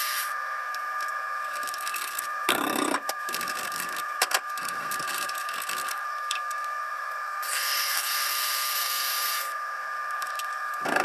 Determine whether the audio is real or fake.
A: fake